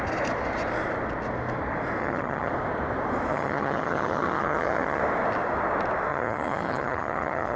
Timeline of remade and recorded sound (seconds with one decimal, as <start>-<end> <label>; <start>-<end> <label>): 0.0-2.0 recorded; 2.0-2.5 remade; 2.5-3.3 recorded; 3.3-5.0 remade; 5.0-6.1 recorded; 6.1-7.6 remade